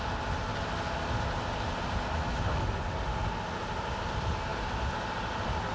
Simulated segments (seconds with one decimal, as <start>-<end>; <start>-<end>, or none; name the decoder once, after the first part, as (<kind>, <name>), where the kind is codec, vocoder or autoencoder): none